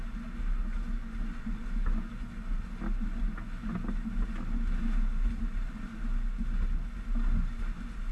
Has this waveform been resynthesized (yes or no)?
no